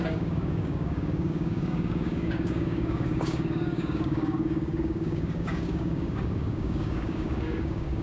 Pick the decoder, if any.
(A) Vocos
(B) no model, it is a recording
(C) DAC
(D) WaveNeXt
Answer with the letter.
C